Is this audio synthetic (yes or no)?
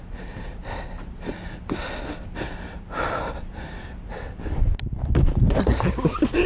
no